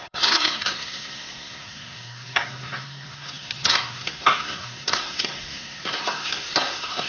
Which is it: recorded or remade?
remade